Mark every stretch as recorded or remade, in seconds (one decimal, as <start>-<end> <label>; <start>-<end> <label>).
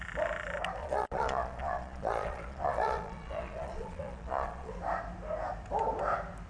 0.0-0.8 recorded; 0.8-4.7 remade; 4.7-6.5 recorded